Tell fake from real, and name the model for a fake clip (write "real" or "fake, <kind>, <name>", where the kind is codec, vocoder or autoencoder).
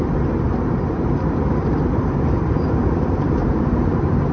fake, vocoder, BigVGAN v2